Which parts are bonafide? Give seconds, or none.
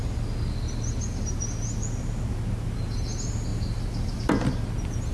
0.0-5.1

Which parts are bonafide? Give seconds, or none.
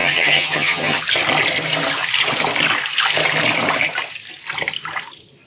1.0-5.5